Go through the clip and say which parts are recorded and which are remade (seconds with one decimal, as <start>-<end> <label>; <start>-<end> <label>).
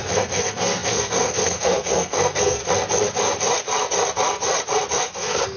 0.0-2.6 remade; 2.6-5.0 recorded; 5.0-5.6 remade